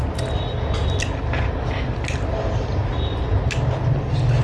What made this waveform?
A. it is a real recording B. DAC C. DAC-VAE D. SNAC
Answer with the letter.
A